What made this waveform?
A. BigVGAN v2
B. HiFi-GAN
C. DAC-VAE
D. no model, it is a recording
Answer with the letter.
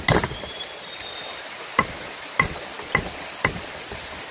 D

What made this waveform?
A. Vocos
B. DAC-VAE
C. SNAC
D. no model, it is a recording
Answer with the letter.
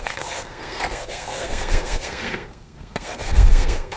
C